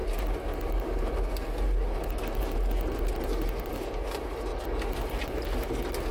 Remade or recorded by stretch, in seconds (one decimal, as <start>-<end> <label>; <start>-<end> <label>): 0.0-3.7 recorded; 3.7-4.5 remade; 4.5-6.1 recorded